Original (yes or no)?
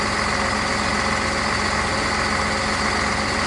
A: yes